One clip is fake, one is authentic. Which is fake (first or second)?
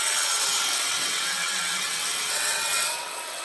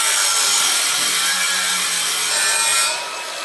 first